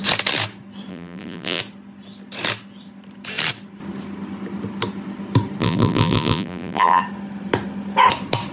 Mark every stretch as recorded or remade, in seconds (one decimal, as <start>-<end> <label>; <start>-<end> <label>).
0.0-0.9 recorded; 0.9-1.6 remade; 1.6-5.6 recorded; 5.6-7.0 remade; 7.0-8.5 recorded